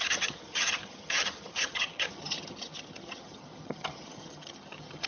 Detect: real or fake fake